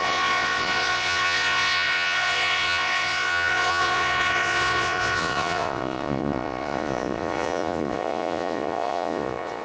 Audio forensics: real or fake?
fake